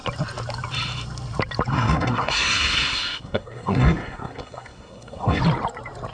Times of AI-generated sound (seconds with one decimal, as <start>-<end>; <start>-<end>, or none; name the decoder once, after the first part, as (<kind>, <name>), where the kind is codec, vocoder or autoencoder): 1.7-5.4 (codec, SNAC)